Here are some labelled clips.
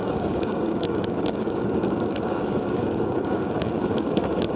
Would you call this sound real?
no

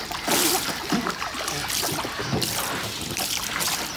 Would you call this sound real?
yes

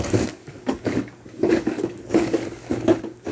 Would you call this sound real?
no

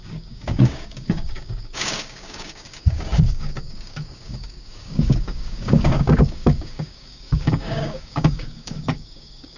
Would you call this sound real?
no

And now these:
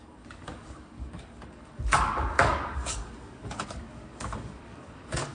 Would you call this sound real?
no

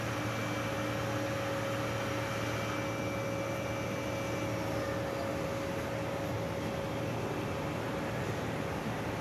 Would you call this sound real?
yes